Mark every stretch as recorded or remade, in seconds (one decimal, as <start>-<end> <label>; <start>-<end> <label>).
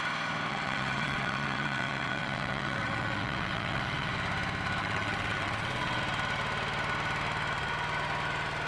0.0-0.5 recorded; 0.5-4.1 remade; 4.1-4.8 recorded; 4.8-6.0 remade; 6.0-8.7 recorded